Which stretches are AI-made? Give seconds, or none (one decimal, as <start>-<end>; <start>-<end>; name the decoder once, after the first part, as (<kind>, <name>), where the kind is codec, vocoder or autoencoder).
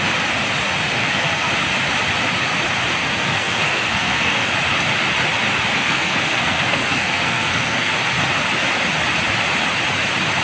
1.0-1.5 (codec, SNAC); 3.0-4.5; 5.8-7.9